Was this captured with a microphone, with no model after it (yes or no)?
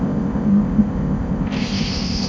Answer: no